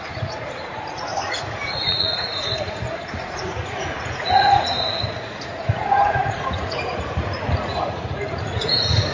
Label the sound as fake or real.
fake